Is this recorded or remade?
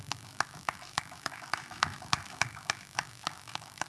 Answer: remade